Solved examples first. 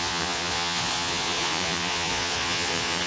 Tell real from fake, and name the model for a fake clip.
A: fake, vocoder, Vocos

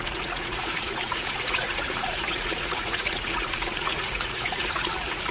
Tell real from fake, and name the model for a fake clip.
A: fake, vocoder, Vocos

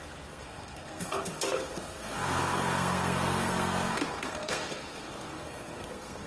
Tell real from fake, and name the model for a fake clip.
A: fake, codec, SNAC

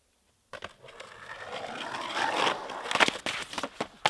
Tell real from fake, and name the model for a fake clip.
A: real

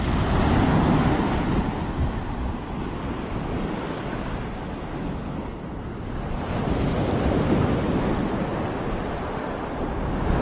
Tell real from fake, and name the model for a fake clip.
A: real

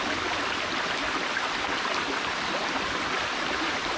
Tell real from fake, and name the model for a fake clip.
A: real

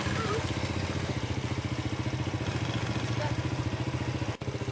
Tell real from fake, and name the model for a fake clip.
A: real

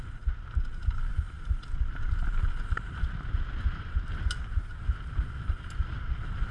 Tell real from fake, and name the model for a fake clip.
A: real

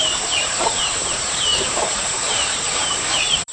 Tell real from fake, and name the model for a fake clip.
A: fake, vocoder, BigVGAN v2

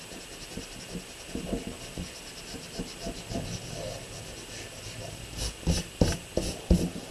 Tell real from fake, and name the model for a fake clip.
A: real